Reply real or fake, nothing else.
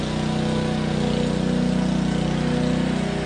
real